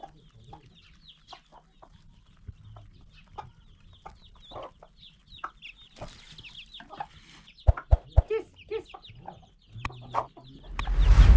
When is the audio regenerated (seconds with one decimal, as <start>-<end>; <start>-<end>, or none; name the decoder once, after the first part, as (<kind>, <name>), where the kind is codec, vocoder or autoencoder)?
none